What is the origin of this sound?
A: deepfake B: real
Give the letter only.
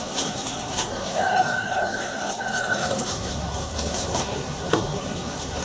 A